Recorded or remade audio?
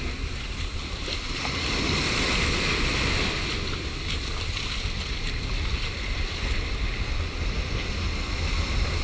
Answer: recorded